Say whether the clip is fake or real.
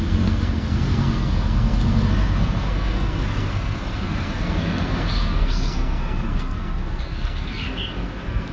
fake